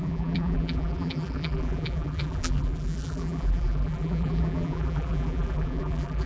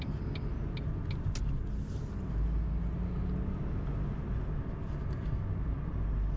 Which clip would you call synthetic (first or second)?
first